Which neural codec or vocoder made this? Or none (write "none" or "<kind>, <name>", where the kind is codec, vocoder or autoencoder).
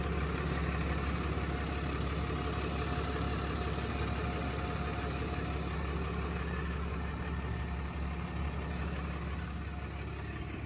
none